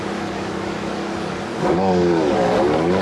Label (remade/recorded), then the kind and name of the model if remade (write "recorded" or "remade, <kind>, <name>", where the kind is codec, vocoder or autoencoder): remade, codec, DAC